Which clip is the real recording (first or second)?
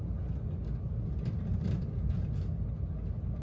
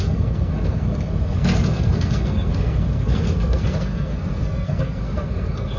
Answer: first